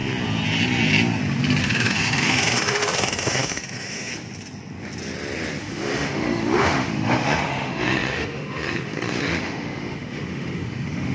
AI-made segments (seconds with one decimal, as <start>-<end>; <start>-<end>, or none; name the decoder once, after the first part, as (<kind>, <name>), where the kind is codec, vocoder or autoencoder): 1.6-4.1 (autoencoder, DAC-VAE); 5.6-11.1